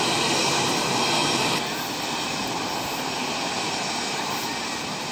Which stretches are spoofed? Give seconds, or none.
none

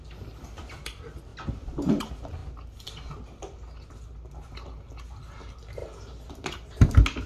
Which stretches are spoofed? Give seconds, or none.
none

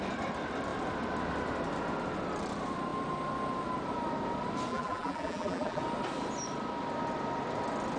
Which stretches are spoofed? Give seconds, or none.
4.7-5.8

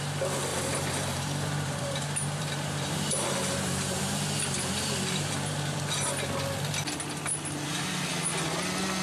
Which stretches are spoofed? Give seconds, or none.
0.5-5.8

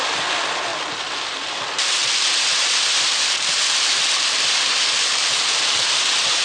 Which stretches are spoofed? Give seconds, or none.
0.7-1.6

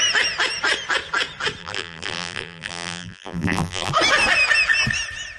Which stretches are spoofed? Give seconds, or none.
1.6-3.9

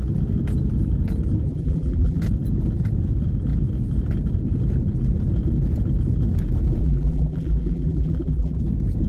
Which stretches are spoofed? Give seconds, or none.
1.5-2.2; 6.8-8.6